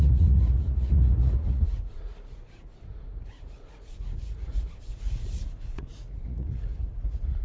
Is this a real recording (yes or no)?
no